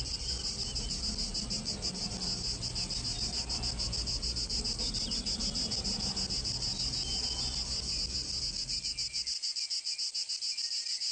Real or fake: real